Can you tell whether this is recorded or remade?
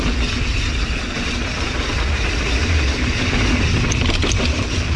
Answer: recorded